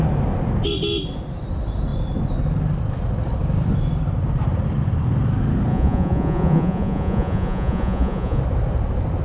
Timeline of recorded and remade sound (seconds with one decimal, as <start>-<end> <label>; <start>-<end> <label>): 0.0-5.7 recorded; 5.7-8.4 remade; 8.4-9.2 recorded